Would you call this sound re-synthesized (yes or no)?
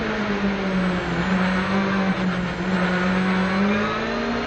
no